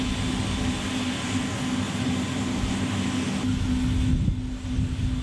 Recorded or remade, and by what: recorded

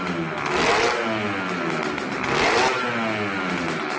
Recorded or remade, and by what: recorded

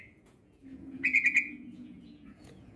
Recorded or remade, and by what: remade, vocoder, Vocos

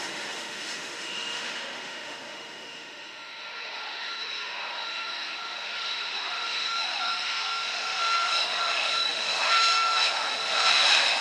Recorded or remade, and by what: remade, autoencoder, DAC-VAE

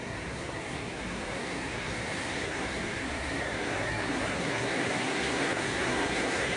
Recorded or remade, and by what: remade, codec, SNAC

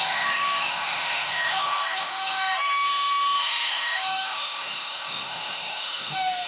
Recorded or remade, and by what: remade, autoencoder, DAC-VAE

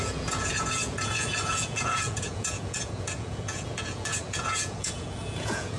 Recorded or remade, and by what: remade, vocoder, Vocos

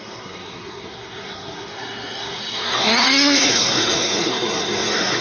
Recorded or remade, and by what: remade, codec, SNAC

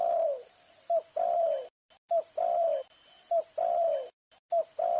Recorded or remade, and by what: recorded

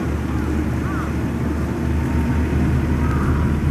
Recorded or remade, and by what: recorded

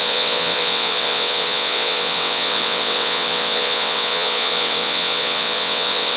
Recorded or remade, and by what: remade, vocoder, WaveNeXt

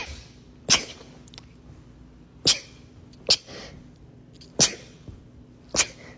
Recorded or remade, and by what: recorded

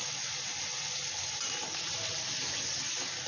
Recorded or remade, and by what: recorded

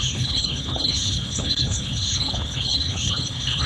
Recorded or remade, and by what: remade, codec, HILCodec